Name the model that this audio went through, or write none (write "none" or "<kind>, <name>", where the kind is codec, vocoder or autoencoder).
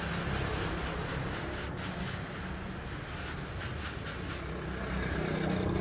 none